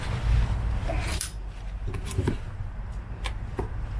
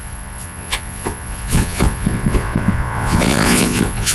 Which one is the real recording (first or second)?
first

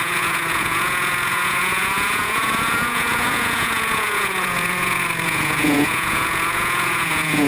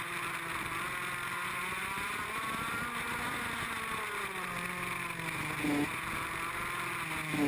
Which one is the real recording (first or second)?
second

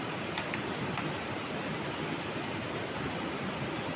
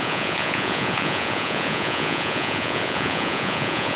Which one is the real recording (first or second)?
first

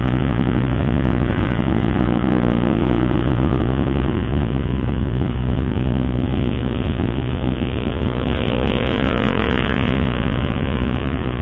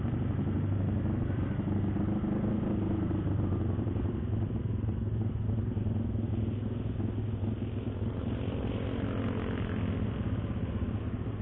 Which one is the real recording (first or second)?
second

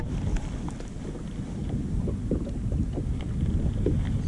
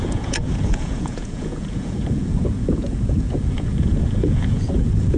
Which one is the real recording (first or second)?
first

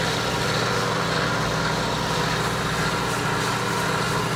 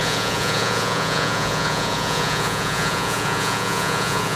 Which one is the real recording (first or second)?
first